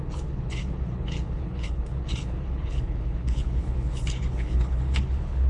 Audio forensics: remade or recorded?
remade